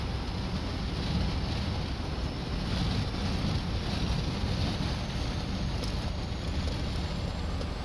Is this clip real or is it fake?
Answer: real